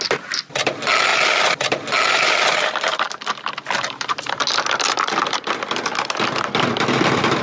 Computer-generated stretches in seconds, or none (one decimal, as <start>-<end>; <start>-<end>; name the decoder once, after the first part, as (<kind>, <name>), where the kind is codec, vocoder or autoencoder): none